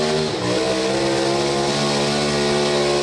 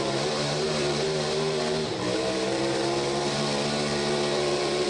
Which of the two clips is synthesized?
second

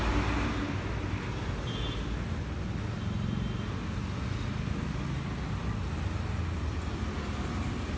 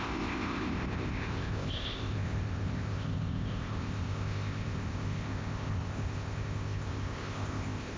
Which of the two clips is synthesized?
second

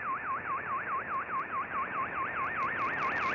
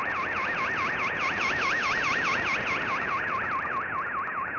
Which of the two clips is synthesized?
second